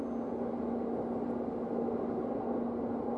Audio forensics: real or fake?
real